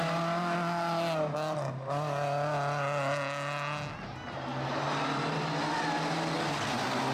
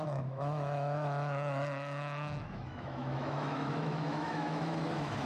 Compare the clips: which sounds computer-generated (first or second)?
second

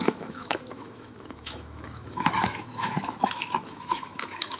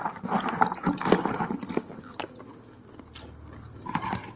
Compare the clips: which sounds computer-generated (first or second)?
first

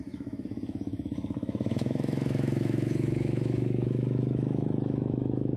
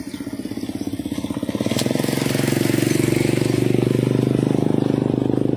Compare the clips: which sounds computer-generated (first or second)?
first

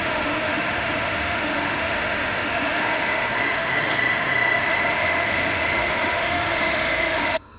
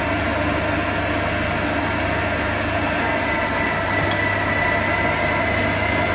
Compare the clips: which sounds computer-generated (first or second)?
first